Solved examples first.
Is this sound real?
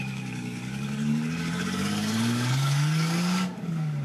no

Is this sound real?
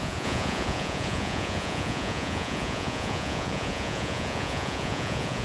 no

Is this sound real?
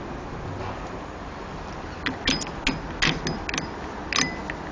yes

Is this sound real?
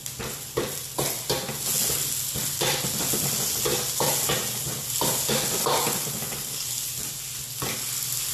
yes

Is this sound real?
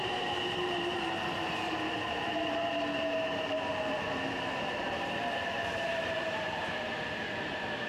no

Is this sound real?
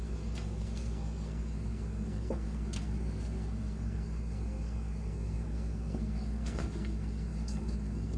no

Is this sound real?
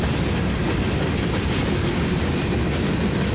yes